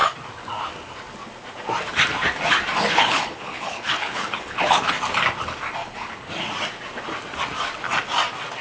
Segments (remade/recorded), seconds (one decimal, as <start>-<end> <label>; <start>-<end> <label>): 0.0-2.8 recorded; 2.8-4.9 remade; 4.9-5.8 recorded; 5.8-6.3 remade; 6.3-8.6 recorded

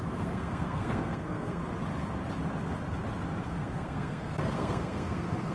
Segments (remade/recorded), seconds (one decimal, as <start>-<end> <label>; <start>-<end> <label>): 0.0-1.6 remade; 1.6-3.4 recorded; 3.4-5.5 remade

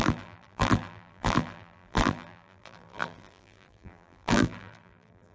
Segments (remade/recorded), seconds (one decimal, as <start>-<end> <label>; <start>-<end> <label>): 0.0-5.3 remade

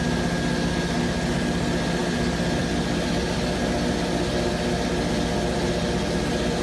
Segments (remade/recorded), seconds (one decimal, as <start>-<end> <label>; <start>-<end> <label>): 0.0-6.6 recorded

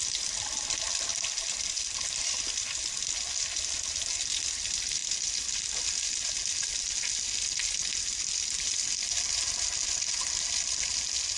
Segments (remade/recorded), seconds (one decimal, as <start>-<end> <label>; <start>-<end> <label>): 0.0-11.4 recorded

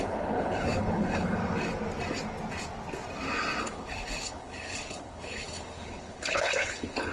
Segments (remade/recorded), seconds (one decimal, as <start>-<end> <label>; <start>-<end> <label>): 0.0-1.4 remade; 1.4-3.6 recorded; 3.6-7.1 remade

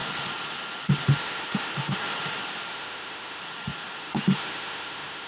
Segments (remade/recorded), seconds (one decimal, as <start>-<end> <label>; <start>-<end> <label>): 0.0-1.2 recorded; 1.2-2.0 remade; 2.0-2.7 recorded; 2.7-3.4 remade; 3.4-4.0 recorded; 4.0-5.3 remade